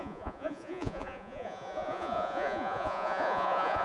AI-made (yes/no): yes